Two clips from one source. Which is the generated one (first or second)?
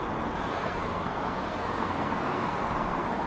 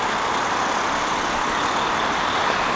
first